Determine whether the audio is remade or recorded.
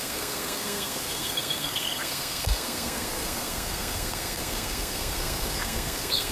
remade